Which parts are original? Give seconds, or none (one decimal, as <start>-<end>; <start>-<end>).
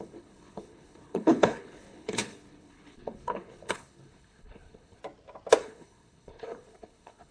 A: 5.0-5.6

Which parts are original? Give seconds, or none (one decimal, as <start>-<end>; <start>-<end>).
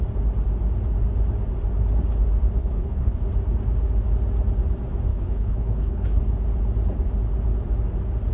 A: 0.0-2.6; 3.2-5.1; 6.2-8.3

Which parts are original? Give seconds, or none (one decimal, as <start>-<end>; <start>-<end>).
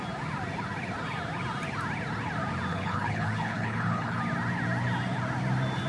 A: 0.0-2.7; 4.2-5.9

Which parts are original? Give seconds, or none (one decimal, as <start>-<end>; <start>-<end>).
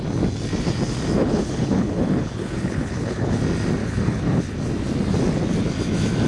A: 0.0-1.2; 3.4-3.8; 4.4-6.3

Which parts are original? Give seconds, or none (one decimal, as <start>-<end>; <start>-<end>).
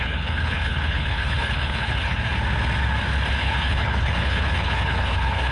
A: 2.3-3.3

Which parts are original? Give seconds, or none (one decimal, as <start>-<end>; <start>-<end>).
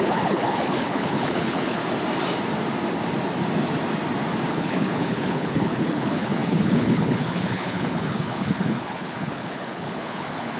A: 1.8-4.5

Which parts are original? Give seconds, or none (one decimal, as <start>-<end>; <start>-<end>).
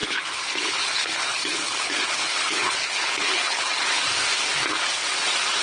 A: 3.7-5.6